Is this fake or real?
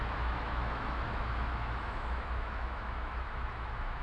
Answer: fake